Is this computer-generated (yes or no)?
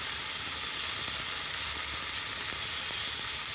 no